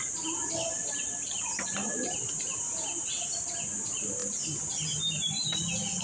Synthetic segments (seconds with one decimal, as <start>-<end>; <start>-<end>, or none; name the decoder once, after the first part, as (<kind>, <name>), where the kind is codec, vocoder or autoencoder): 0.0-4.2 (vocoder, BigVGAN v2); 5.1-6.0